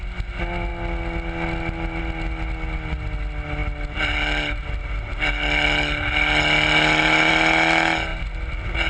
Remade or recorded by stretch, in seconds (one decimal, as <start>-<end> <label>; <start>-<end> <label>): 0.0-8.9 recorded